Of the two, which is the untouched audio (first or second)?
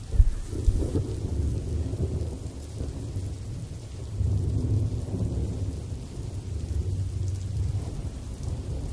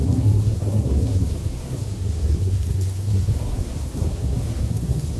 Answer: first